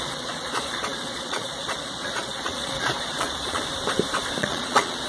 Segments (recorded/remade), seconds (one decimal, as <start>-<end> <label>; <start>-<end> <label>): 0.0-3.6 remade; 3.6-4.4 recorded; 4.4-5.1 remade